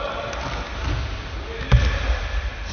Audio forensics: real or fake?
real